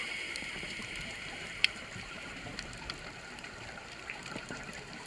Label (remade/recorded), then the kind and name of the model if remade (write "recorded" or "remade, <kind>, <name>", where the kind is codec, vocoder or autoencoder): remade, vocoder, BigVGAN v2